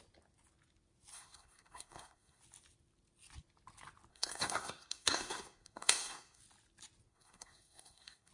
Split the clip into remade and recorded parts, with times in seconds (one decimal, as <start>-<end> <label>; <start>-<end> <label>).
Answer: 0.0-1.1 recorded; 1.1-2.4 remade; 2.4-4.1 recorded; 4.1-6.4 remade; 6.4-7.1 recorded; 7.1-8.3 remade